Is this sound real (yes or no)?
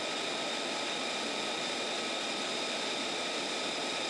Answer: yes